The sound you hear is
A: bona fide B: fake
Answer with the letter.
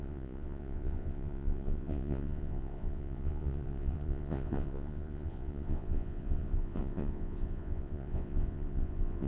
B